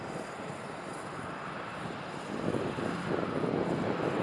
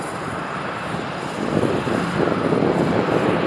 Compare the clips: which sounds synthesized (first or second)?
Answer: second